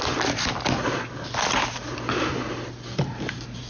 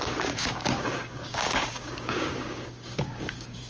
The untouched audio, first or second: first